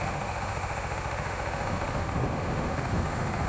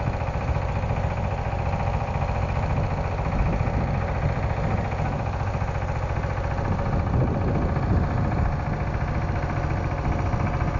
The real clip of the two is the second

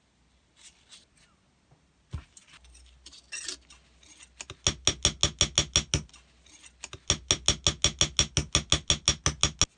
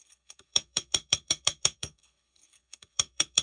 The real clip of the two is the first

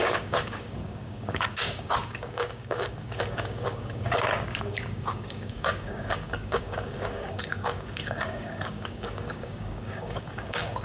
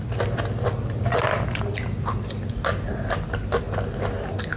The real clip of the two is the second